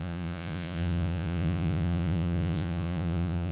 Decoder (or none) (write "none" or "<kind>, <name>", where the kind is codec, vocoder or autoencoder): vocoder, Vocos